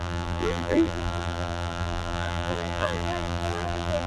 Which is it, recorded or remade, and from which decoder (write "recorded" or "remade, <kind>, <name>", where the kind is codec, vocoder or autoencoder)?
remade, vocoder, BigVGAN v2